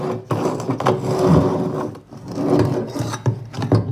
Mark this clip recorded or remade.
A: recorded